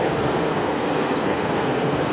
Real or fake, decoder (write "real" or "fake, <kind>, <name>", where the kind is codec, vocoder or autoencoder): fake, codec, SNAC